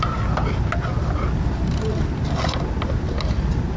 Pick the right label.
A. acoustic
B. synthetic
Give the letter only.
A